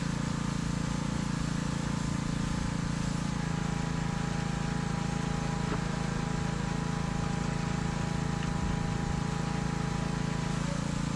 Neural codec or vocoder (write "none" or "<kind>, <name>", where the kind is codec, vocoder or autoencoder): none